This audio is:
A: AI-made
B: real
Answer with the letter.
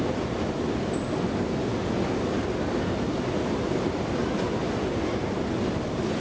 B